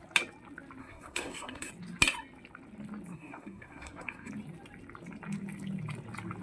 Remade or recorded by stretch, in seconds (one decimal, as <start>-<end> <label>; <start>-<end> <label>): 0.0-0.8 recorded; 0.8-1.7 remade; 1.7-3.1 recorded; 3.1-4.3 remade; 4.3-6.4 recorded